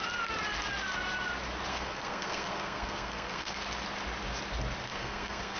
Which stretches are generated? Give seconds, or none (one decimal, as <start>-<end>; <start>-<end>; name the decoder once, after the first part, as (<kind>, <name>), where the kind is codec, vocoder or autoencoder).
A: 1.7-3.6 (codec, SNAC); 4.9-5.6

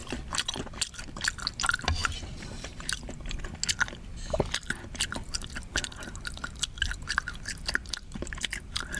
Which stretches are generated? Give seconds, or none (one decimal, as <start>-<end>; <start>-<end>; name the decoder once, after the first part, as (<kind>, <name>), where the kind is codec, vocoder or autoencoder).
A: 2.0-3.1 (vocoder, BigVGAN v2)

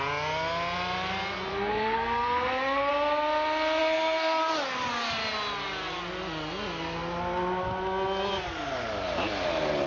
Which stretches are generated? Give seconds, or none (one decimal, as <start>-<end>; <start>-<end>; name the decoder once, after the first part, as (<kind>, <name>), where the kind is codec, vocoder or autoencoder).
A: 1.5-2.9 (codec, SNAC); 3.8-4.4

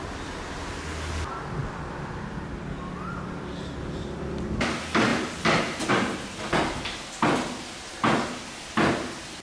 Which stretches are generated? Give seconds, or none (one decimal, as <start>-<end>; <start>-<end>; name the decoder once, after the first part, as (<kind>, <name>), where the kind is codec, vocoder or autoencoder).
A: none

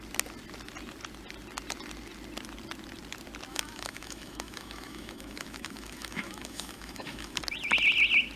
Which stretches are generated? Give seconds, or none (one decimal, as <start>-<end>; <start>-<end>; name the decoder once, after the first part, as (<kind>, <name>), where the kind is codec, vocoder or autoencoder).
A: 3.5-7.4 (autoencoder, DAC-VAE)

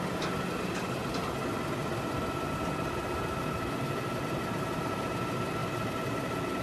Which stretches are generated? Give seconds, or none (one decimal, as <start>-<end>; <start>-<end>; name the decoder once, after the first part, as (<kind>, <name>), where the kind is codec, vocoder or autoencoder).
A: none